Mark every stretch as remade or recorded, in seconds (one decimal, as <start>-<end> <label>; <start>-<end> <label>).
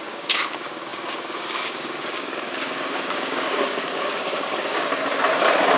0.0-4.9 remade; 4.9-5.8 recorded